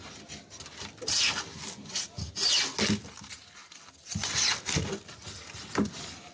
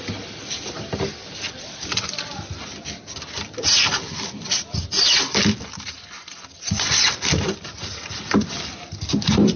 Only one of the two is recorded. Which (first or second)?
first